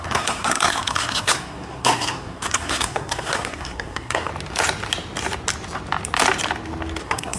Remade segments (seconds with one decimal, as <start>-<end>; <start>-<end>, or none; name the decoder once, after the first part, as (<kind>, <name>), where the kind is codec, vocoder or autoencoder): 0.0-4.3 (codec, SNAC); 7.0-7.4